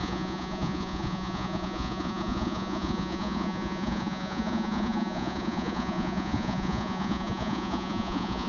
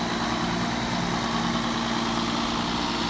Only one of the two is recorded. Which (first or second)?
second